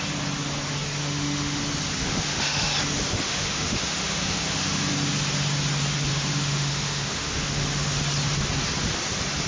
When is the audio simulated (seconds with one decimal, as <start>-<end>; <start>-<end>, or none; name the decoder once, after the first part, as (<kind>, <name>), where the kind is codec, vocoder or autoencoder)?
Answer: 1.0-1.6 (autoencoder, DAC-VAE); 2.0-2.7; 3.1-4.9; 6.1-8.0